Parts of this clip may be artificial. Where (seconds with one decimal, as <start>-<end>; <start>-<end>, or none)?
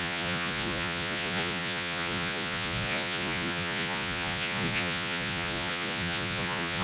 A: 0.0-6.8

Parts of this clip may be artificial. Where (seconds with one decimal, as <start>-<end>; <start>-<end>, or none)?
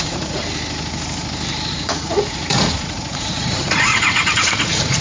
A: 0.0-0.4; 1.7-5.0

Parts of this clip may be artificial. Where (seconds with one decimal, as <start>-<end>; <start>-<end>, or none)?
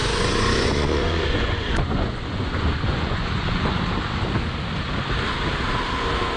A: 0.0-3.8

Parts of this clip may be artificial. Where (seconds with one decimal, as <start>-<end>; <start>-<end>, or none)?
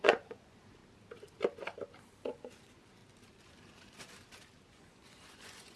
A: 0.0-0.8; 2.2-3.0; 4.7-5.8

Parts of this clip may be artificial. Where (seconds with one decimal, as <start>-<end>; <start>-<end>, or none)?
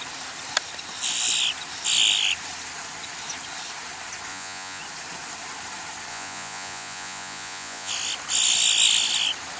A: 4.3-4.8; 6.1-7.9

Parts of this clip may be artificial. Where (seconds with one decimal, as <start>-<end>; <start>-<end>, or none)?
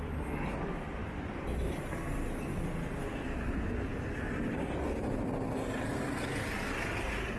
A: none